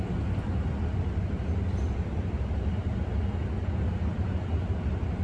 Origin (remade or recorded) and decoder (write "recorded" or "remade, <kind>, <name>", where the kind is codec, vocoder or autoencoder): recorded